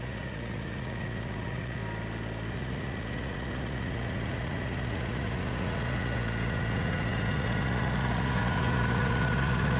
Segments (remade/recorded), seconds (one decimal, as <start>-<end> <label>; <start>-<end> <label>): 0.0-1.8 remade; 1.8-2.5 recorded; 2.5-9.8 remade